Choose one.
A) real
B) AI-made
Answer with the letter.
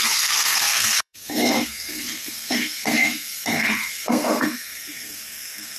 B